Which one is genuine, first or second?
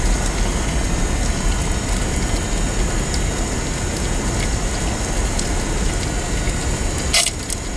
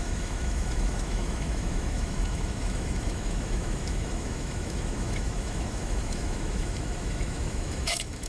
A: first